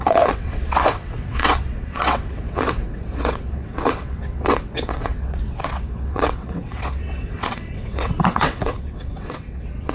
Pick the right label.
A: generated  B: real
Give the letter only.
A